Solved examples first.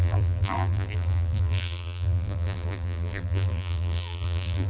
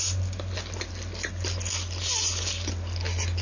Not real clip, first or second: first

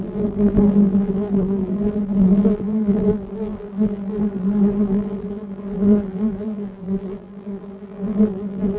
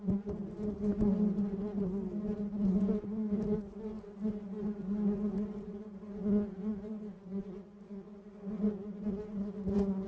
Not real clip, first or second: first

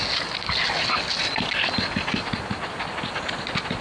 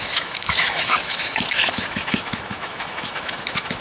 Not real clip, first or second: second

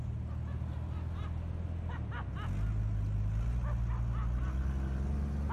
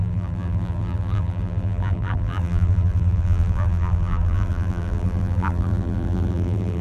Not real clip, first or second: second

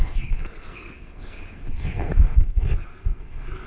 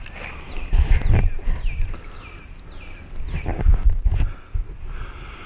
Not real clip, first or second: first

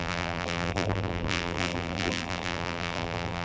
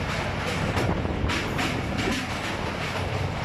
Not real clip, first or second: first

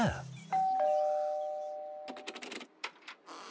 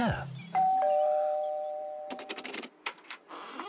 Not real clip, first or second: second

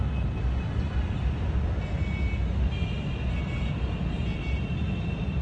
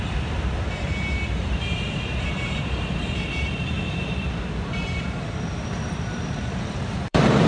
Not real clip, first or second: second